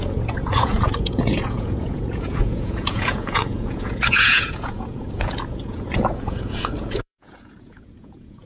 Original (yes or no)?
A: no